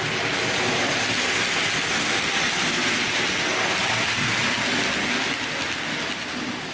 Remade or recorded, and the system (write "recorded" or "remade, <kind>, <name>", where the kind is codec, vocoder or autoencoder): recorded